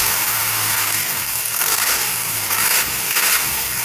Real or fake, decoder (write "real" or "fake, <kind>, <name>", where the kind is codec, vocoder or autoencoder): fake, codec, DAC